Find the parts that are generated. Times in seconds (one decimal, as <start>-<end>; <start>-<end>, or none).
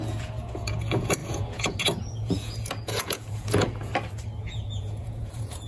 0.0-3.9; 4.4-5.7